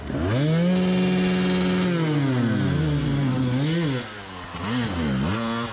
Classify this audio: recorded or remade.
recorded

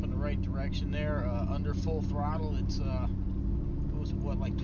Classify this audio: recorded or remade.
recorded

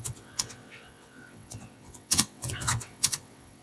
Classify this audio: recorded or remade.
remade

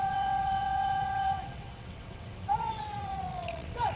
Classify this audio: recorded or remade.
remade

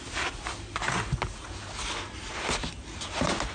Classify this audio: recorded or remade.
recorded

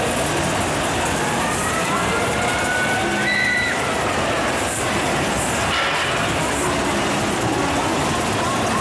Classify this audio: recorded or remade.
recorded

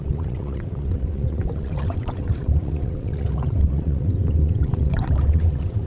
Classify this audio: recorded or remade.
remade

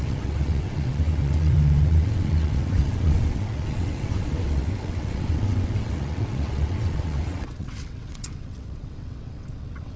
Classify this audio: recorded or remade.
remade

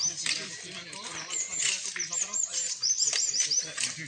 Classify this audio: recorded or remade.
recorded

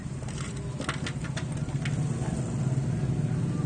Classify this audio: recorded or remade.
recorded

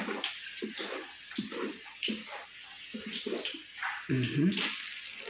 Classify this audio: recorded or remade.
recorded